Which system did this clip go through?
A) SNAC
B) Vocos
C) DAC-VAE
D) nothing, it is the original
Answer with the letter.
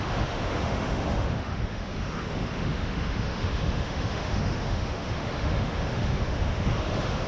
C